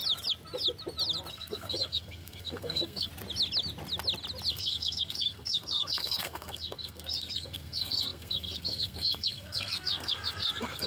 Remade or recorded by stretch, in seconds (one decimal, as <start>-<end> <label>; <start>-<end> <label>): 0.0-1.3 recorded; 1.3-3.1 remade; 3.1-4.5 recorded; 4.5-10.9 remade